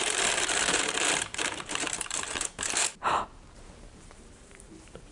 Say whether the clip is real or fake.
fake